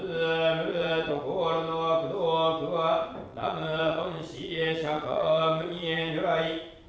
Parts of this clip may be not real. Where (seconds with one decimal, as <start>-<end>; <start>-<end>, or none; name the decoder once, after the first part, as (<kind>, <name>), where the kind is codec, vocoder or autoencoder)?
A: 0.7-1.2 (vocoder, Vocos); 3.3-6.1

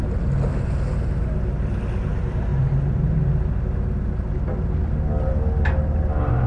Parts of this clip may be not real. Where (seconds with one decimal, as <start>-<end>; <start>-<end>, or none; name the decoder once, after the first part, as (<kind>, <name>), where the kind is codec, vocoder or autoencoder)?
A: none

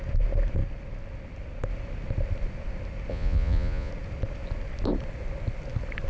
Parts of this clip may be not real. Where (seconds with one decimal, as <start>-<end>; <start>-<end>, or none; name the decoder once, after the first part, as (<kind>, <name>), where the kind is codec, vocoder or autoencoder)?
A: 3.1-3.9 (vocoder, Vocos)

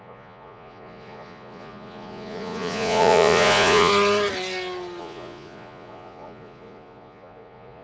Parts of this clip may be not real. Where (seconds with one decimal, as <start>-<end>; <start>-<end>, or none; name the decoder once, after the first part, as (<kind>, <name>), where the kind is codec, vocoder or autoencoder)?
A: 0.0-3.9 (vocoder, Vocos); 5.0-7.8

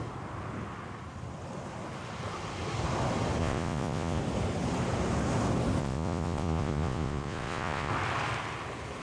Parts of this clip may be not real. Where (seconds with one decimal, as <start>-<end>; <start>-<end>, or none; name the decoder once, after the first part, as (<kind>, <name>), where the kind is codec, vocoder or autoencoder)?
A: 3.4-4.2 (vocoder, Vocos); 5.8-7.9

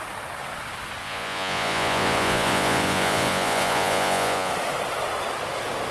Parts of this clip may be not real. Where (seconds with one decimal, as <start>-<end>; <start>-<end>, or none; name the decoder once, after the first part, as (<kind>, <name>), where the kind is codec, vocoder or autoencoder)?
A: 1.0-4.5 (vocoder, Vocos)